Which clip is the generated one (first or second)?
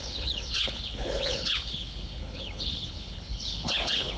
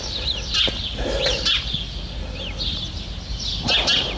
first